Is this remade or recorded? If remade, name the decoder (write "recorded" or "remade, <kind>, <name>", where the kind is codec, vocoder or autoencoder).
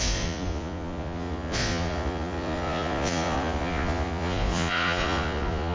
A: remade, vocoder, Vocos